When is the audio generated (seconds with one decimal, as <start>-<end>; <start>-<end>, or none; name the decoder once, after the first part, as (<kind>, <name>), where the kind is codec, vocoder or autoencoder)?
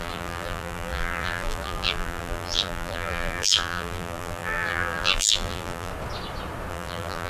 0.0-5.9 (vocoder, BigVGAN v2); 6.7-7.3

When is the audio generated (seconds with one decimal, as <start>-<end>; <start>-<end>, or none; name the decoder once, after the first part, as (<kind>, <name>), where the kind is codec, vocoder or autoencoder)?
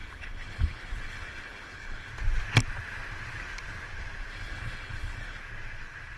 0.0-2.1 (codec, HILCodec); 4.3-5.4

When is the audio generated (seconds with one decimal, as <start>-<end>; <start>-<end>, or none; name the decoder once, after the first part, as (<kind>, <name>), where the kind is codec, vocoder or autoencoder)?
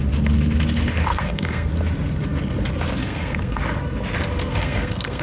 1.1-1.7 (codec, SNAC); 3.0-3.6; 4.4-5.2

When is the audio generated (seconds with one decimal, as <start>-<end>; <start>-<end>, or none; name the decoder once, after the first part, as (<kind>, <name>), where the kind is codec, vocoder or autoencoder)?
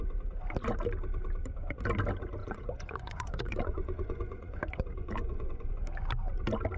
2.4-5.7 (vocoder, Vocos)